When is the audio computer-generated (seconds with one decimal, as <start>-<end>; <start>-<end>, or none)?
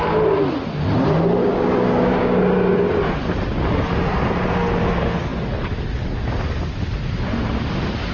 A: 1.4-2.4